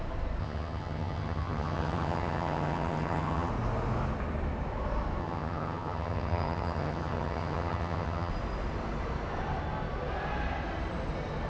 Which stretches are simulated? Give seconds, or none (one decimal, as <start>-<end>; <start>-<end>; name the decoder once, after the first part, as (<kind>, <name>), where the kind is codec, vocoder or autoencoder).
0.4-3.5 (vocoder, HiFi-GAN); 5.2-8.3